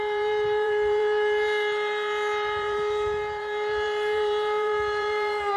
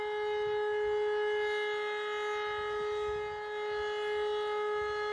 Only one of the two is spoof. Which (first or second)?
first